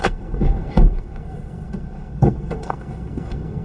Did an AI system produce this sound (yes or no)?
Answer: yes